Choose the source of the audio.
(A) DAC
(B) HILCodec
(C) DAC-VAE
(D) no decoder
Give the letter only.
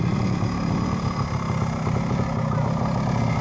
D